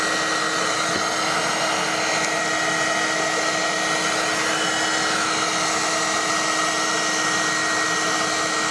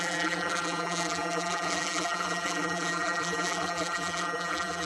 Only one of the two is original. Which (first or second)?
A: first